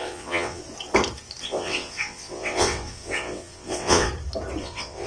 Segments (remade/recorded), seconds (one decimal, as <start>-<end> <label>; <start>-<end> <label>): 0.0-0.6 remade; 0.6-1.4 recorded; 1.4-4.1 remade; 4.1-4.6 recorded; 4.6-5.1 remade